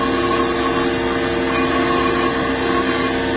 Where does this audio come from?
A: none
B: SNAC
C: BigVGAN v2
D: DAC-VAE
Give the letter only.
A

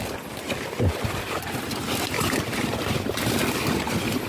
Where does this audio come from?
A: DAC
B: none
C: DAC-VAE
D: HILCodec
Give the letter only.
B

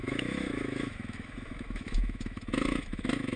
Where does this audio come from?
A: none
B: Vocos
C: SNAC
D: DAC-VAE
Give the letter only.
D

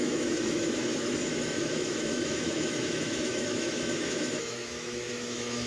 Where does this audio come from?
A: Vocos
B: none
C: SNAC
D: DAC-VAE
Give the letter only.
D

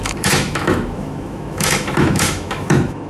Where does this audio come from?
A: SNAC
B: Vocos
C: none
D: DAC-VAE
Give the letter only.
D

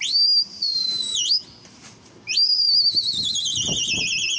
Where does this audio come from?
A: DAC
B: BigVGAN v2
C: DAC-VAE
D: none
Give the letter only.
D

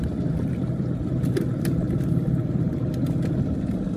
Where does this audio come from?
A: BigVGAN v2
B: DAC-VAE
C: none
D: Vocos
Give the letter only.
C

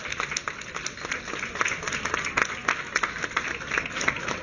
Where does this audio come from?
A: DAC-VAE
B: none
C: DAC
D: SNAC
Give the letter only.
B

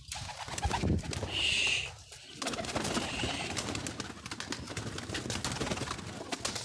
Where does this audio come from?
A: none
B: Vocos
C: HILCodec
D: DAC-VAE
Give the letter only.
A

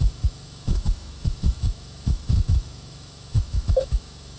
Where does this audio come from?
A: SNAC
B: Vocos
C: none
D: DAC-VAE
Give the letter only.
D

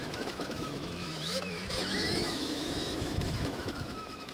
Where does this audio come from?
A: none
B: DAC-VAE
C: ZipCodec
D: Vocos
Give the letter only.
B